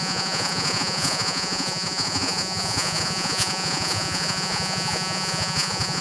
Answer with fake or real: fake